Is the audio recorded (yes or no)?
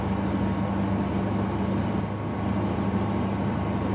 yes